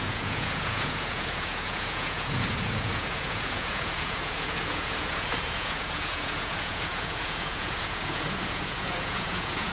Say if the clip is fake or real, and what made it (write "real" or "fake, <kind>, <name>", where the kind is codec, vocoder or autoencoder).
fake, vocoder, Vocos